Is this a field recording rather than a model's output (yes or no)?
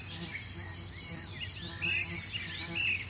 yes